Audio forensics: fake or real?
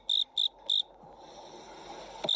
real